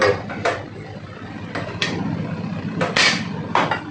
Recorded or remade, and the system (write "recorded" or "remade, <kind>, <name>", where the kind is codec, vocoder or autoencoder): recorded